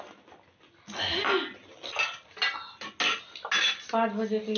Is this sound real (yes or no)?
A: yes